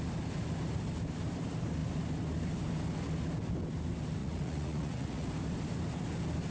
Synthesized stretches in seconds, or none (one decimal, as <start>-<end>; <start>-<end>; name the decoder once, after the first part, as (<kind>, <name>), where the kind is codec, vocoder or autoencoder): 4.2-5.3 (vocoder, Vocos)